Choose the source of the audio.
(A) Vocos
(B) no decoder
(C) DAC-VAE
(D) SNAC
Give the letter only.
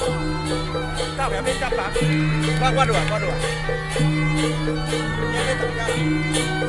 B